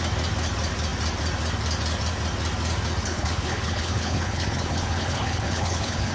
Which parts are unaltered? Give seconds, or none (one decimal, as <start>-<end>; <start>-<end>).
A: 0.0-3.0